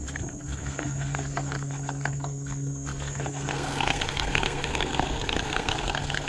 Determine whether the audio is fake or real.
fake